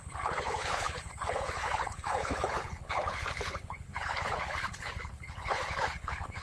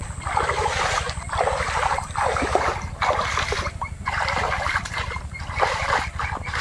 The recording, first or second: second